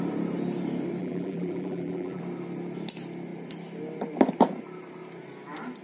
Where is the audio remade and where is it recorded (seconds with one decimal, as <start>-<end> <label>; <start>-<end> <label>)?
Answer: 0.0-1.0 recorded; 1.0-2.2 remade; 2.2-5.8 recorded